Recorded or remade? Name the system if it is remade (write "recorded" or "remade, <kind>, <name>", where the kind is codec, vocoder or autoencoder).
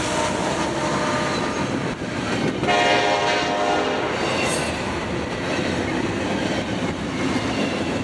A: recorded